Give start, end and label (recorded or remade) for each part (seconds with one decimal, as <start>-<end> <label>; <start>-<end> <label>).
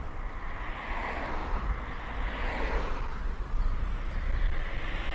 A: 0.0-5.1 recorded